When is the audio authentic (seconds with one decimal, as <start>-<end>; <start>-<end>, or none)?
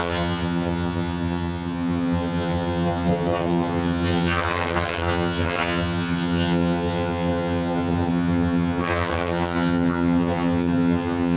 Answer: none